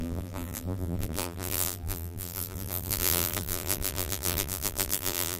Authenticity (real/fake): fake